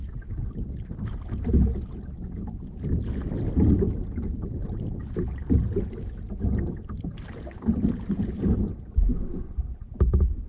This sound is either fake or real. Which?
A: real